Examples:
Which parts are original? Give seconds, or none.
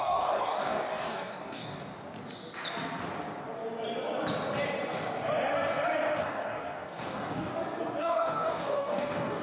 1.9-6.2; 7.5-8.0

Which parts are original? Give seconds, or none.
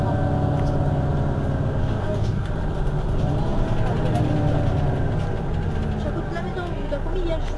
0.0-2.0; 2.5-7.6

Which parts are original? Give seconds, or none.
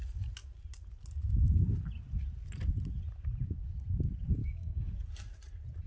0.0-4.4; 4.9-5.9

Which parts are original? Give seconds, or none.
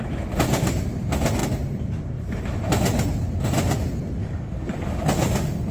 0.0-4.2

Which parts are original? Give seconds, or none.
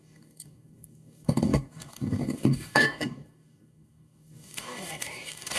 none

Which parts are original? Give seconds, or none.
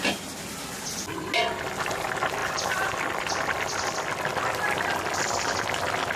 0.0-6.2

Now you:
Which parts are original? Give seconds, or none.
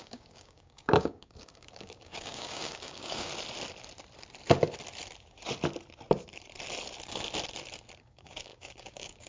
3.3-8.0